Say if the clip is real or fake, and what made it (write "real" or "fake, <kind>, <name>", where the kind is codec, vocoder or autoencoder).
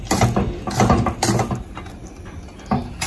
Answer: real